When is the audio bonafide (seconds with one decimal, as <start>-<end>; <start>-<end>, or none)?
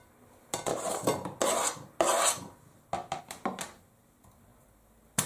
0.0-5.3